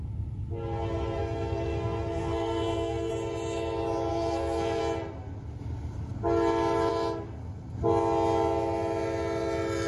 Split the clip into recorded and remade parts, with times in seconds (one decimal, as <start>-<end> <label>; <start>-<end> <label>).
0.0-1.2 recorded; 1.2-3.1 remade; 3.1-4.1 recorded; 4.1-4.8 remade; 4.8-9.9 recorded